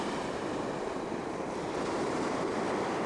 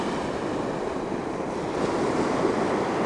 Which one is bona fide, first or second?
second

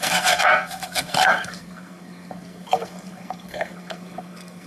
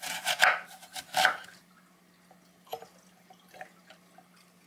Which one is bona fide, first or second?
second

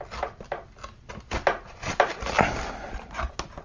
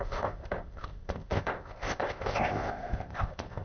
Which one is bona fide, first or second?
first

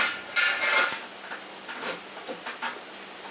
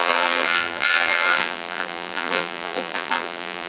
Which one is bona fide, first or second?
first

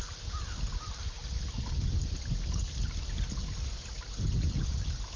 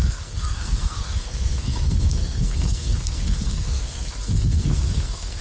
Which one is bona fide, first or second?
first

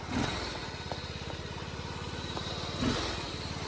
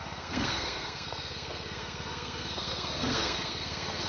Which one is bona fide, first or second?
first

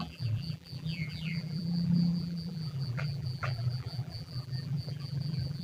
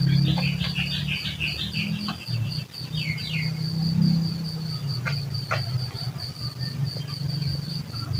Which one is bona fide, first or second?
second